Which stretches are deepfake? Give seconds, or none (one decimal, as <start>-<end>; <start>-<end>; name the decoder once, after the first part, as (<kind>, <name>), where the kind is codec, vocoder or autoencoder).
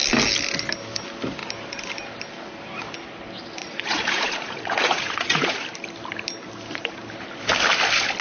3.6-5.7 (vocoder, Vocos)